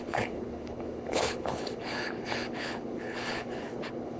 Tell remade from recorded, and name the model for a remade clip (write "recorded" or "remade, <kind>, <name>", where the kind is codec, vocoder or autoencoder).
remade, codec, HILCodec